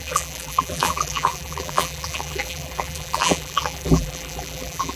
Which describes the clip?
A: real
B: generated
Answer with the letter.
B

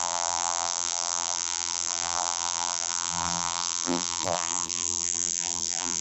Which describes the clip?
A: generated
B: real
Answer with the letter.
A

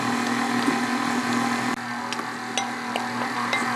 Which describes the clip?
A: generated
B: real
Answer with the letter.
B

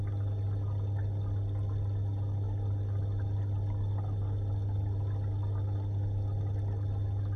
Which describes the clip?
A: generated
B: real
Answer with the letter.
B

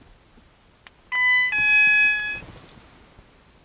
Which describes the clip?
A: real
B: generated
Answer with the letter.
A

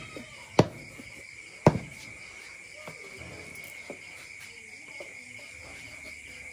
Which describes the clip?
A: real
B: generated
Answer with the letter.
A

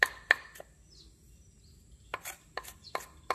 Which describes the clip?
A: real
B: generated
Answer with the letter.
A